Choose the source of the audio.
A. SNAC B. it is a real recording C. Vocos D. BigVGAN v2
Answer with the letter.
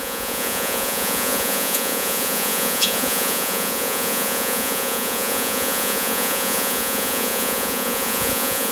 C